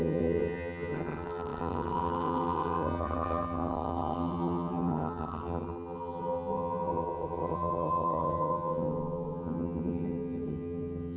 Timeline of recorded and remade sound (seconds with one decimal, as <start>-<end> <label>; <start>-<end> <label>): 0.0-11.2 remade